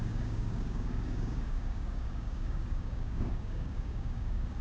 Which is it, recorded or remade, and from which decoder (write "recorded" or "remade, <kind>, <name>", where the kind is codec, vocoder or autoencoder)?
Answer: remade, codec, DAC